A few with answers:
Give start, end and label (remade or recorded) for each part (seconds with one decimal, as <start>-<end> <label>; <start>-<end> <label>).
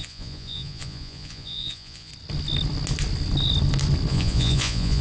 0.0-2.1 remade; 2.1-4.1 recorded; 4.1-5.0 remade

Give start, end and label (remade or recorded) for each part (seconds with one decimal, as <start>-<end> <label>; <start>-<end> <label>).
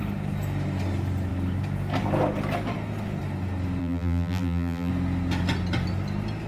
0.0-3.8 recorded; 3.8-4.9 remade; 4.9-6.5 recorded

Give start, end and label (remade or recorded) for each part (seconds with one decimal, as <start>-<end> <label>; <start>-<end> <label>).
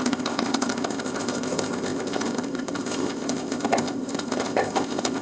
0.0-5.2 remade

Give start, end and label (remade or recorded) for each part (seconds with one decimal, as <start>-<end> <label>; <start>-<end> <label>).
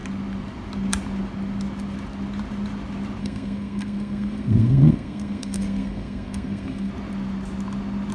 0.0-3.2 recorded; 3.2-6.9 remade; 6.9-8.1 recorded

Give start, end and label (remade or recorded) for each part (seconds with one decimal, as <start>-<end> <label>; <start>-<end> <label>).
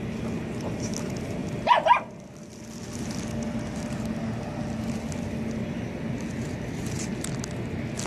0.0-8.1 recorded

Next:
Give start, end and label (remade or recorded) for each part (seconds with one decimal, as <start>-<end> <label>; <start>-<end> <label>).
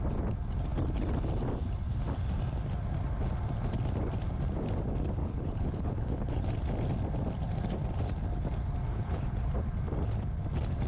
0.0-5.2 recorded; 5.2-6.4 remade; 6.4-8.9 recorded; 8.9-9.5 remade; 9.5-10.9 recorded